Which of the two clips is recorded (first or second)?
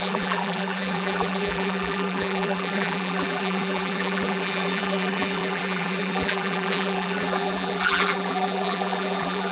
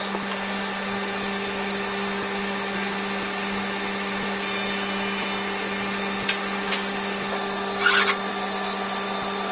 second